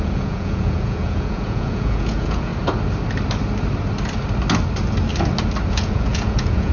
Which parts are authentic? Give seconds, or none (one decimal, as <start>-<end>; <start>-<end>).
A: 2.5-5.7